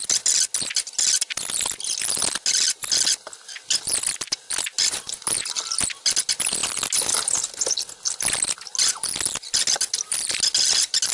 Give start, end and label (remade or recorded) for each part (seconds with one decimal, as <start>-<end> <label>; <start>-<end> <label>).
0.0-11.1 recorded